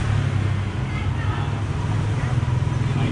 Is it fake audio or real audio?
real